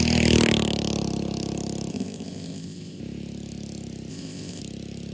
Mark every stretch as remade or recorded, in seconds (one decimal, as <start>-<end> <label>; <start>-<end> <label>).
0.0-1.9 recorded; 1.9-3.0 remade; 3.0-4.1 recorded; 4.1-4.6 remade; 4.6-5.1 recorded